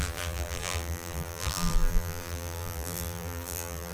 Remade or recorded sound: remade